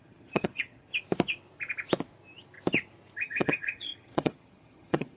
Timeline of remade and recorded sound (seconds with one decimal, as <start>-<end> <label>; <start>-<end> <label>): 0.0-0.9 remade; 0.9-3.2 recorded; 3.2-5.2 remade